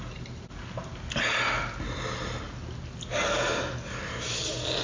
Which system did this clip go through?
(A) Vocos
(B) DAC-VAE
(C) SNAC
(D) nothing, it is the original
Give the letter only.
D